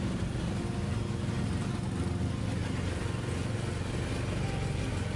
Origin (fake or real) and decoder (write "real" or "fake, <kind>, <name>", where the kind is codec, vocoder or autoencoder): real